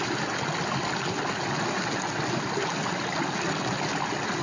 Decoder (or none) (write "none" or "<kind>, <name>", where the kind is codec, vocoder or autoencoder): none